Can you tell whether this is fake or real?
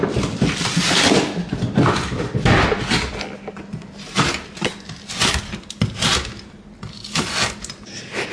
real